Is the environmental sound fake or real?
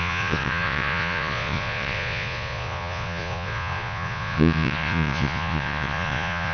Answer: fake